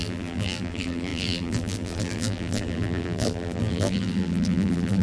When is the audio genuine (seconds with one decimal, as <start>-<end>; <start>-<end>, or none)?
none